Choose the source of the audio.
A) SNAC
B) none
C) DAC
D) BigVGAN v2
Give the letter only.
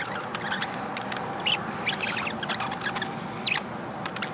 B